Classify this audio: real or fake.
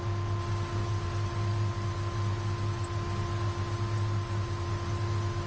real